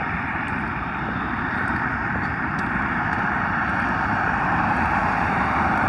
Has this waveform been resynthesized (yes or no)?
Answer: yes